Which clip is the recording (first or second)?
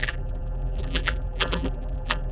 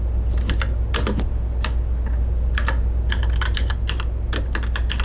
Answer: second